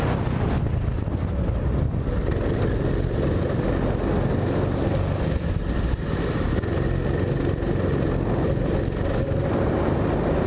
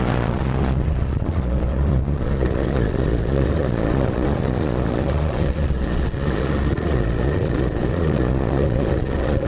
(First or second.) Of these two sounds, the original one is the first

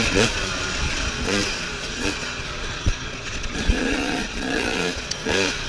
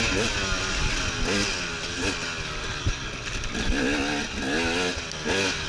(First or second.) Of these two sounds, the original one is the second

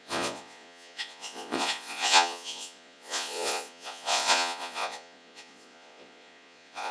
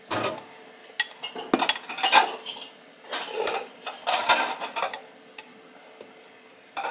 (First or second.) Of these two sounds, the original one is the second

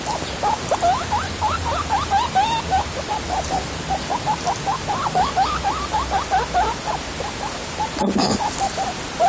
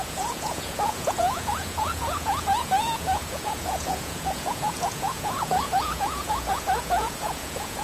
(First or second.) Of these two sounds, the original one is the first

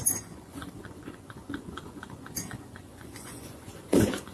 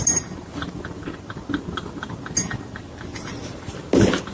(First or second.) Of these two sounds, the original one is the second